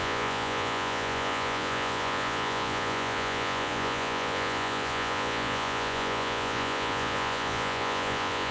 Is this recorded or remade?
remade